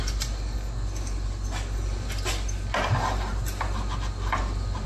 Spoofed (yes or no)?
no